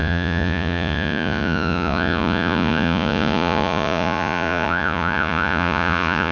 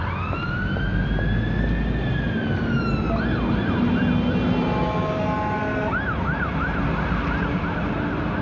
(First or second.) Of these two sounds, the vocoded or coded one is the first